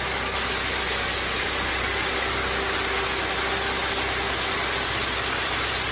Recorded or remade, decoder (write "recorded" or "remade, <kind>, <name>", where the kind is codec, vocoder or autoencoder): recorded